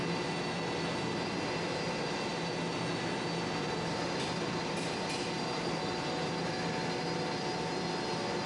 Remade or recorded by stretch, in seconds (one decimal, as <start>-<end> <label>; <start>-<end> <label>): 0.0-8.5 recorded